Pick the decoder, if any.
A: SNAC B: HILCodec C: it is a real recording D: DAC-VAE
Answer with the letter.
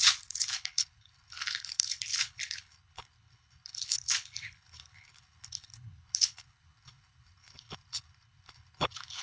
B